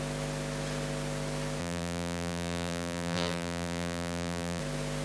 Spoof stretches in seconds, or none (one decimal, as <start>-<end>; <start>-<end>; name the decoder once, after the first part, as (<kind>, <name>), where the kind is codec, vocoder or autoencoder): 1.6-4.6 (vocoder, BigVGAN v2)

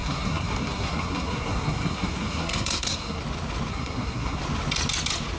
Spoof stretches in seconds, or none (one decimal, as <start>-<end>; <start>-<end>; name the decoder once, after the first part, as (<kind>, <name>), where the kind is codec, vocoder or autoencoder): 0.0-3.2 (codec, SNAC); 3.7-4.4

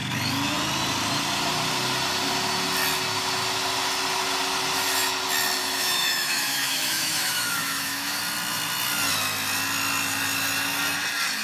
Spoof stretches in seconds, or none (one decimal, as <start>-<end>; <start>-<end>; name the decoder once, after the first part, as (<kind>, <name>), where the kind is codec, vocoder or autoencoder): 5.6-8.2 (autoencoder, DAC-VAE)

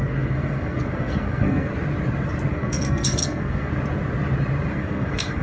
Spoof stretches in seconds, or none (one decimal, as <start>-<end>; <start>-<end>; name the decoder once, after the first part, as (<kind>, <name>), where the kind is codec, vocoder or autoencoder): 0.0-1.7 (codec, SNAC); 2.5-3.7; 4.7-5.4

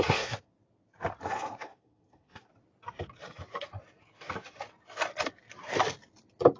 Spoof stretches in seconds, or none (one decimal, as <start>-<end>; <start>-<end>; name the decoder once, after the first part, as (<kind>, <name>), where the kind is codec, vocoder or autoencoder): 0.0-0.5 (codec, SNAC); 1.2-2.5

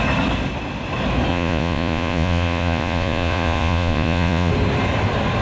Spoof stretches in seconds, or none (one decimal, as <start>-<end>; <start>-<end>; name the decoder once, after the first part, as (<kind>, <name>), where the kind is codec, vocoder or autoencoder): 1.3-4.5 (vocoder, Vocos)

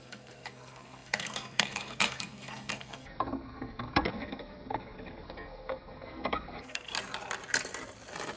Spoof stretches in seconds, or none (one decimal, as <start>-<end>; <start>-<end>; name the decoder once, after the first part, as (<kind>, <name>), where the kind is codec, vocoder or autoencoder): 0.0-6.9 (codec, SNAC)

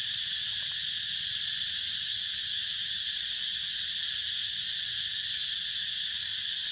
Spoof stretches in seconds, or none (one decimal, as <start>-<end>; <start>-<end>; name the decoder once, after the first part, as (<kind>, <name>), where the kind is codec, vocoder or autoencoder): none